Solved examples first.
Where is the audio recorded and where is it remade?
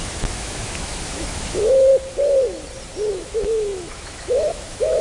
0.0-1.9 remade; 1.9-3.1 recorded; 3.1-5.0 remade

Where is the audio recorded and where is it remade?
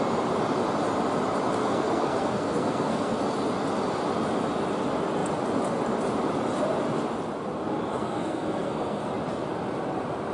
0.0-1.6 recorded; 1.6-3.2 remade; 3.2-7.9 recorded; 7.9-9.1 remade; 9.1-10.3 recorded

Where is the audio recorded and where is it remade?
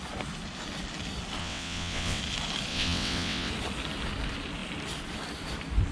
0.0-1.4 recorded; 1.4-2.2 remade; 2.2-2.7 recorded; 2.7-3.5 remade; 3.5-5.9 recorded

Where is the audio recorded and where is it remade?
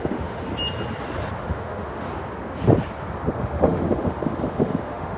0.0-0.5 remade; 0.5-1.5 recorded; 1.5-2.1 remade; 2.1-3.3 recorded; 3.3-5.2 remade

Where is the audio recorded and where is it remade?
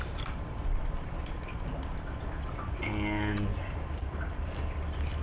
0.0-3.5 recorded; 3.5-4.6 remade; 4.6-5.2 recorded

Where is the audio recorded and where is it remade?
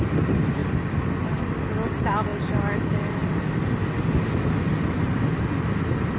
0.0-6.2 recorded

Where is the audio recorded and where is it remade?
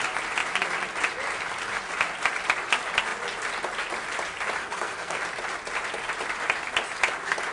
0.0-4.6 recorded; 4.6-5.2 remade; 5.2-7.5 recorded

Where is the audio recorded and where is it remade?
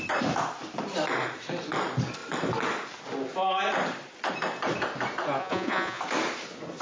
0.0-5.4 recorded; 5.4-6.0 remade; 6.0-6.8 recorded